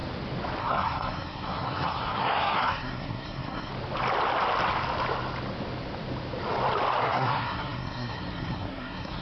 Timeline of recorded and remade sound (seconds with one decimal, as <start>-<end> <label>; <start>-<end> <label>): 0.0-0.6 recorded; 0.6-3.7 remade; 3.7-7.0 recorded; 7.0-9.2 remade